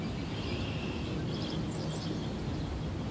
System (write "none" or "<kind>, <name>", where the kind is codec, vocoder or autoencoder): none